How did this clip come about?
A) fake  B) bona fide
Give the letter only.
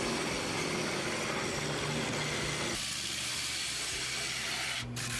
B